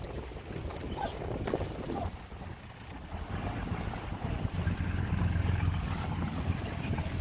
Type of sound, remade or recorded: recorded